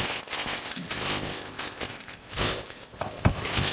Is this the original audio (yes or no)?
no